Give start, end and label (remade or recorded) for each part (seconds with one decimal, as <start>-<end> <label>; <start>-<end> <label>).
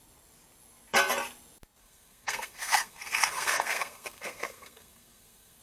0.0-1.8 recorded; 1.8-5.6 remade